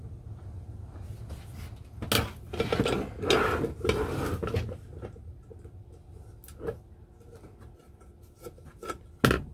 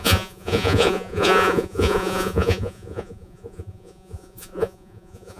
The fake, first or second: second